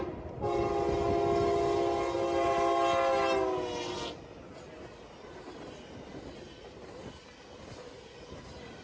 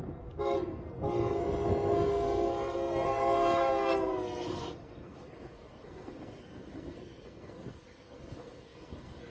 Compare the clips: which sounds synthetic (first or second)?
second